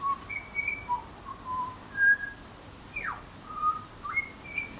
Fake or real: fake